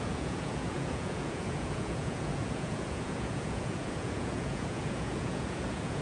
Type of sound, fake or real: fake